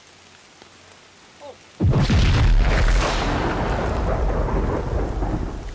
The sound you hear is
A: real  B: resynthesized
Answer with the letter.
A